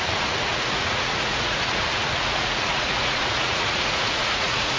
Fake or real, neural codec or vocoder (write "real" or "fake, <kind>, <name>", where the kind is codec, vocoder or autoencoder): fake, vocoder, Vocos